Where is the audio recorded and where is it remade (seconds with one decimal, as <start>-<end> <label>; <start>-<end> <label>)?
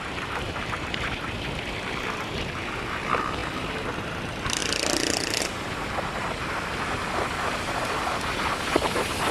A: 0.0-9.3 recorded